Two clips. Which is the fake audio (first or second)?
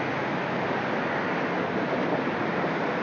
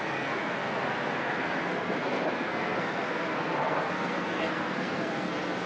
second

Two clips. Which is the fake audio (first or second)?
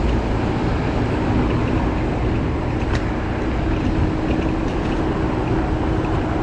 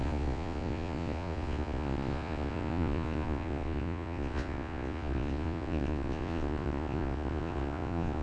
second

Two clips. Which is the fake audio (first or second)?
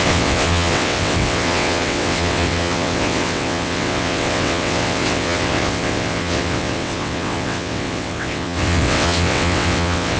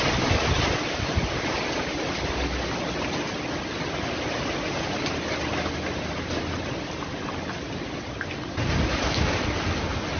first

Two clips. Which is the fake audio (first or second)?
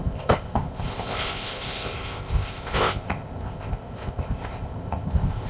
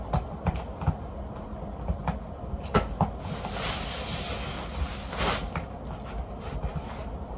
first